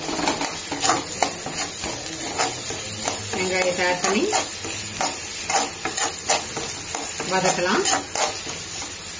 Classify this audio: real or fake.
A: real